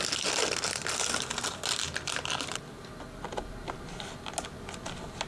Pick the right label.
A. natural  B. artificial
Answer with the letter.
A